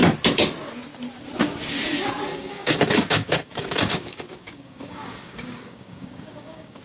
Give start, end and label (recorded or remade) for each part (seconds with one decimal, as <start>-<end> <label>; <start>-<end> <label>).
0.0-2.3 recorded; 2.3-6.8 remade